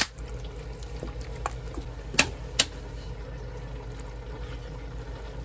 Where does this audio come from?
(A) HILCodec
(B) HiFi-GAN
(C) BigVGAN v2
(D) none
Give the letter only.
D